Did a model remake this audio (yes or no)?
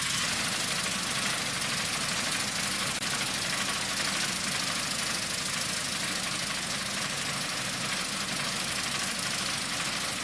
no